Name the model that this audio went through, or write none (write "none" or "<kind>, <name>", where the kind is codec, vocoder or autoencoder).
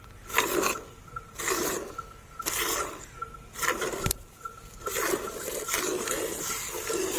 none